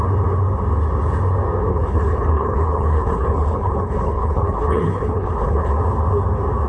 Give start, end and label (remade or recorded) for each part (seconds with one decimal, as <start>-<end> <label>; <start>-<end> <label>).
0.0-1.7 recorded; 1.7-5.7 remade; 5.7-6.7 recorded